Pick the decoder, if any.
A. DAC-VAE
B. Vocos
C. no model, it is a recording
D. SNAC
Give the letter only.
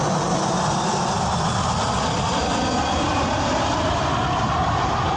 C